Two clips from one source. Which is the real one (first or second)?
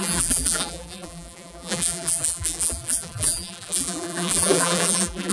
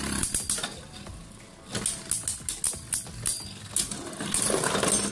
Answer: second